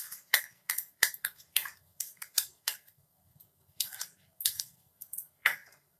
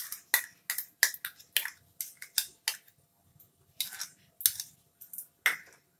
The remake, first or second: first